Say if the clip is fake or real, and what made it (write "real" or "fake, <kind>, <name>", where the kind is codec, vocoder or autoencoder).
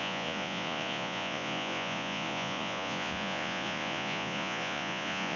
fake, vocoder, Vocos